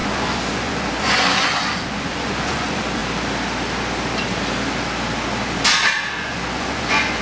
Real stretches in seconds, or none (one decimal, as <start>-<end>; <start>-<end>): 3.0-6.1